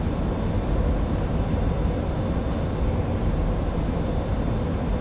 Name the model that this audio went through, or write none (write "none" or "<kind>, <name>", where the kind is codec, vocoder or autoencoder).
none